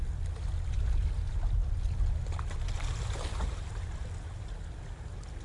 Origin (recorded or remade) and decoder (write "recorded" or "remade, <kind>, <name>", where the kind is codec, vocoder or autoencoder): recorded